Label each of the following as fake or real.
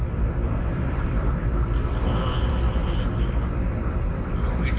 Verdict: fake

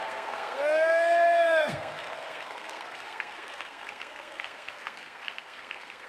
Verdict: fake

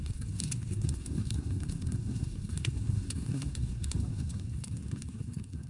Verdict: fake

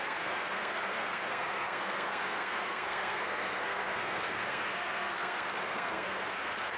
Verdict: fake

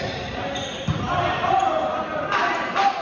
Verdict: real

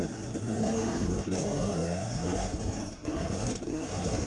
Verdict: fake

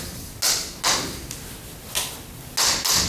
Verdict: real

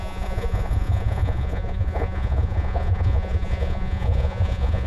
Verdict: fake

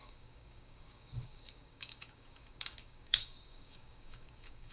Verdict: fake